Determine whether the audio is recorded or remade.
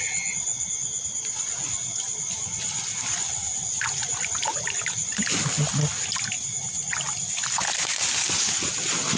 recorded